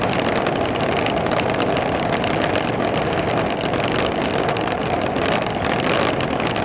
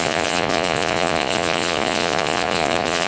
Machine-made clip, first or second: second